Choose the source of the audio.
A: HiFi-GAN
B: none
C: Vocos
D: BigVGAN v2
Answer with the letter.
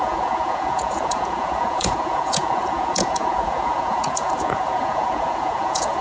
C